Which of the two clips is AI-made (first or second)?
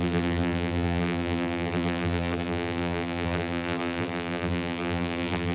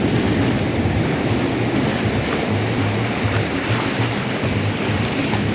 first